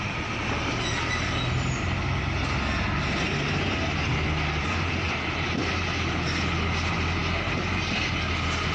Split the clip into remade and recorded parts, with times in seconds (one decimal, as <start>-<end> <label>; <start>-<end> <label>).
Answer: 0.0-8.7 recorded